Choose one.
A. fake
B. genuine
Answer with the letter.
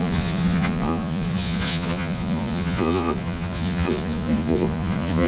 A